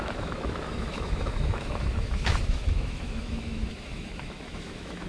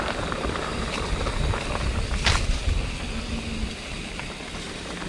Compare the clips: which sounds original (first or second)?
second